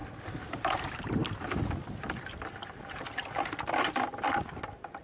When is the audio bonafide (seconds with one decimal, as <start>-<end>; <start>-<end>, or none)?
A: 0.5-5.0